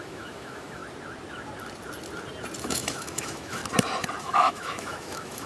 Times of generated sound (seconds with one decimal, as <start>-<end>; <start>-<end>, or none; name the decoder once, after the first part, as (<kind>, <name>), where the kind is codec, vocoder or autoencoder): 0.0-0.8 (autoencoder, DAC-VAE); 2.6-3.6; 4.2-5.5